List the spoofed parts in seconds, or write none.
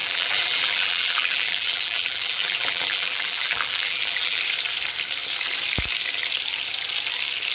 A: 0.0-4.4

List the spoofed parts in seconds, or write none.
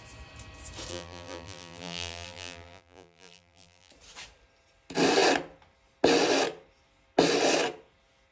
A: 0.9-3.9